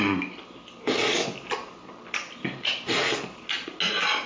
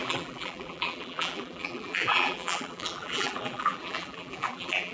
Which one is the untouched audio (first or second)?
first